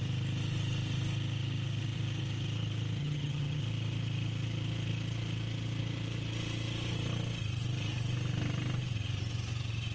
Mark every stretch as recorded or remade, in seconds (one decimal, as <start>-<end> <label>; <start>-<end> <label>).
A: 0.0-3.0 recorded; 3.0-3.6 remade; 3.6-9.9 recorded